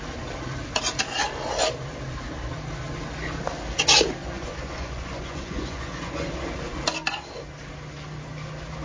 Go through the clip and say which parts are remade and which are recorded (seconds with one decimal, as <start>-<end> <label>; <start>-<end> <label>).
0.0-4.2 recorded; 4.2-6.3 remade; 6.3-8.8 recorded